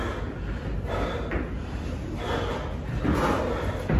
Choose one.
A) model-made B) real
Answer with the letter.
B